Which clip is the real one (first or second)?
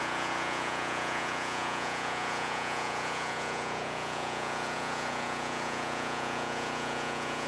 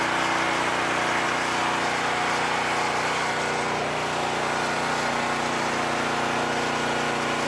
second